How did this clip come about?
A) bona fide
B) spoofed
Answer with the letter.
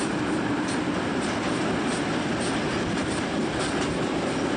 A